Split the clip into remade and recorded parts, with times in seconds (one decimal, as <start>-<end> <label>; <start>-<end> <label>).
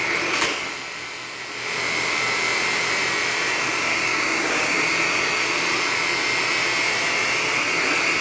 0.0-3.9 recorded; 3.9-4.8 remade; 4.8-8.2 recorded